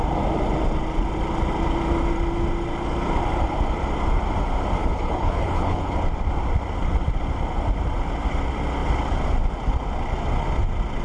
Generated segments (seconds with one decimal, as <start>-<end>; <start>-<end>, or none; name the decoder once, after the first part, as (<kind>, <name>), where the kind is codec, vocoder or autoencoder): 4.8-5.9 (codec, HILCodec)